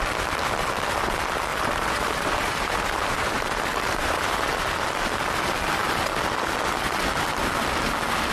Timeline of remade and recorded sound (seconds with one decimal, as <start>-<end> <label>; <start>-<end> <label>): 0.0-1.5 recorded; 1.5-4.4 remade; 4.4-8.3 recorded